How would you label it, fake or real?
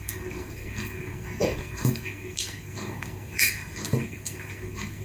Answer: fake